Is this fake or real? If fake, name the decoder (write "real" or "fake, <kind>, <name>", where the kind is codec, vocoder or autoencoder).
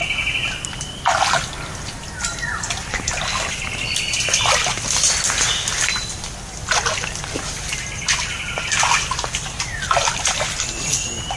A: real